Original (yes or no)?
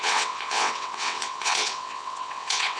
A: no